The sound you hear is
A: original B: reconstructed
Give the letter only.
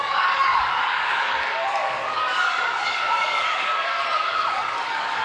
B